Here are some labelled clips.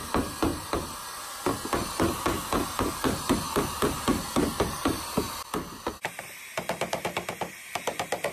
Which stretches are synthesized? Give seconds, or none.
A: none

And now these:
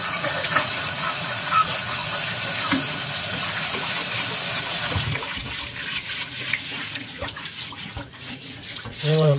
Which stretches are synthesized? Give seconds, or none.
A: 0.0-2.0 (vocoder, Vocos); 2.8-4.0; 4.6-5.4; 5.9-9.4

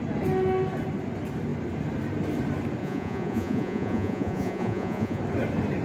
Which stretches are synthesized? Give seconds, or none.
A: 2.8-5.2 (vocoder, Vocos)

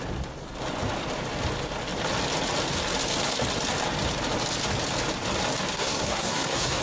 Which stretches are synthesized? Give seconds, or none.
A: 5.7-6.8 (codec, SNAC)

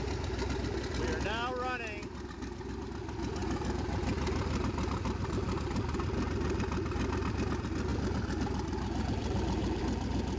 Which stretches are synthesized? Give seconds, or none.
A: none

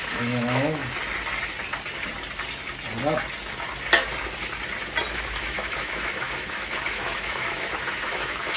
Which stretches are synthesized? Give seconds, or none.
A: 0.0-0.8 (autoencoder, DAC-VAE); 5.1-8.6

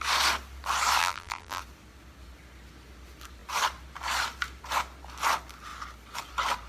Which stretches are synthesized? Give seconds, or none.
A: 1.0-1.6 (vocoder, BigVGAN v2)

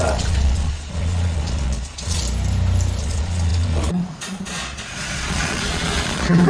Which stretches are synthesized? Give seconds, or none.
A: 0.0-2.2 (vocoder, Vocos); 3.0-6.5